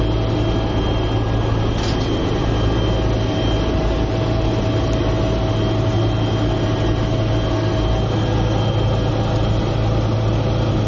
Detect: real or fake real